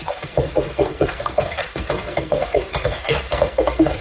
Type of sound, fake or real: fake